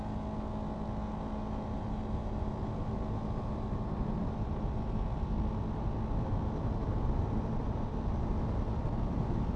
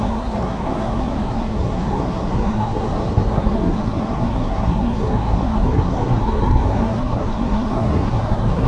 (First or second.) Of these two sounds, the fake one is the second